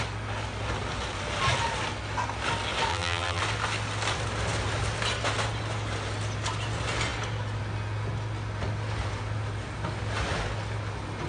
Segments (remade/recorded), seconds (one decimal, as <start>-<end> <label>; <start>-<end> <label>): 0.0-2.9 recorded; 2.9-3.4 remade; 3.4-11.3 recorded